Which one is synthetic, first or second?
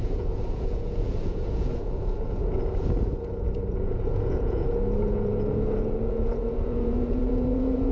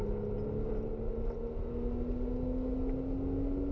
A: first